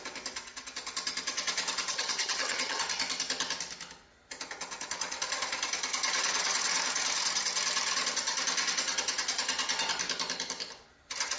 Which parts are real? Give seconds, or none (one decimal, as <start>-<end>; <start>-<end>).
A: 0.0-1.9; 2.8-11.4